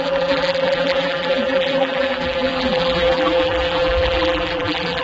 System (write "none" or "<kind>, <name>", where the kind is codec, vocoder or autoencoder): vocoder, BigVGAN v2